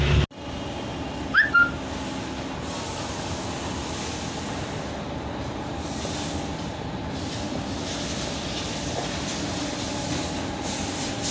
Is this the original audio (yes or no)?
yes